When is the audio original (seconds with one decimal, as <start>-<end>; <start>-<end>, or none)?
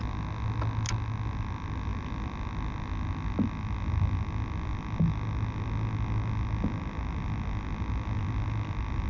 0.0-9.1